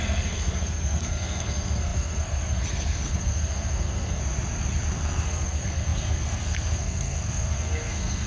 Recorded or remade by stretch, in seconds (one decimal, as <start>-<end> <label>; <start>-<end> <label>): 0.0-4.2 remade; 4.2-4.9 recorded; 4.9-8.3 remade